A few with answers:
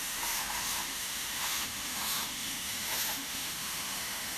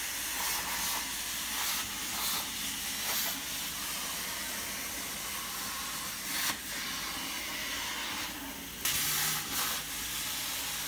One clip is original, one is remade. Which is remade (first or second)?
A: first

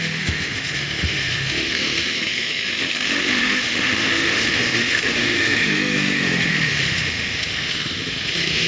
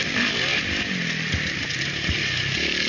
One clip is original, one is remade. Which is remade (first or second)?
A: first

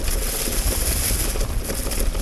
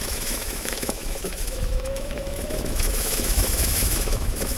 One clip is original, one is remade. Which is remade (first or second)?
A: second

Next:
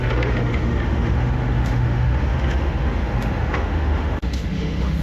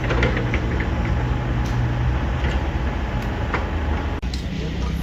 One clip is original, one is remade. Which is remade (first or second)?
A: first